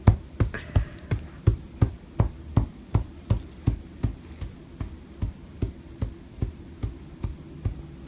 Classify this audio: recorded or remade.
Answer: recorded